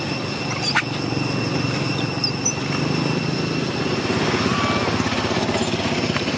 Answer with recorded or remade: recorded